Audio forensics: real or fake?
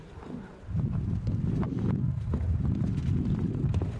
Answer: real